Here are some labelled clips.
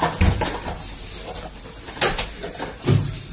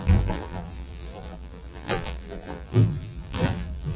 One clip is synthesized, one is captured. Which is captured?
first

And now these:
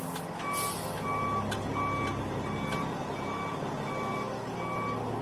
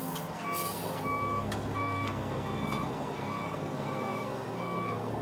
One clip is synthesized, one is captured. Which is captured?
first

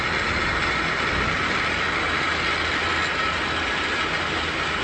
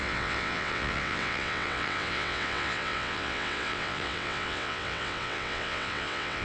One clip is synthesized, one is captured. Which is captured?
first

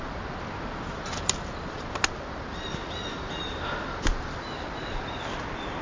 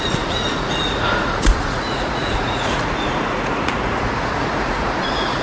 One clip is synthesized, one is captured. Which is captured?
first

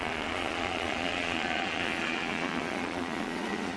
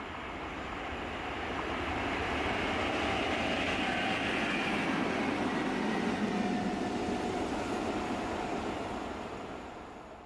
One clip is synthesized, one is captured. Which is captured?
second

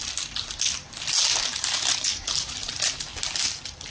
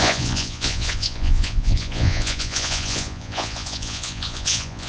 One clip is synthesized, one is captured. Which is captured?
first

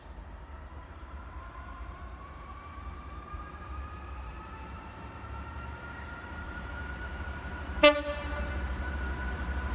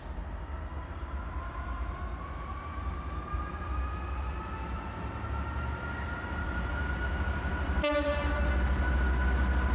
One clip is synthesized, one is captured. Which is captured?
second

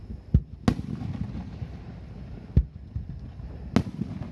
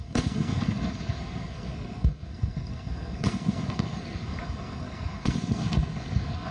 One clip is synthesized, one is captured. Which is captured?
first